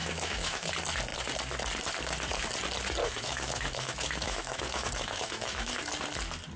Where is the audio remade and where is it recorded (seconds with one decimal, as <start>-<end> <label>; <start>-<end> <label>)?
0.0-0.7 remade; 0.7-3.0 recorded; 3.0-5.7 remade; 5.7-6.6 recorded